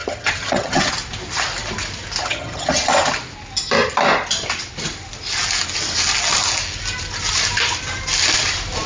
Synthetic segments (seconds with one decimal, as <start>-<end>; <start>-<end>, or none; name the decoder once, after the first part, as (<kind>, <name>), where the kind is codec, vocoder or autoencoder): 0.0-0.9 (vocoder, HiFi-GAN); 2.2-3.0